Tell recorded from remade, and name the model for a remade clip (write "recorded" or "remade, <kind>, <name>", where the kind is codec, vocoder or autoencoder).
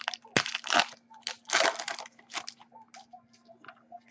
recorded